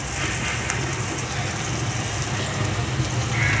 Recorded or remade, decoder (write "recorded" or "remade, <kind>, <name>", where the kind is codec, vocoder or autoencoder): recorded